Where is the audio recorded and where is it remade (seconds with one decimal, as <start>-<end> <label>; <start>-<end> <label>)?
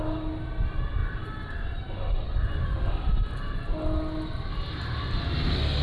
0.0-5.8 recorded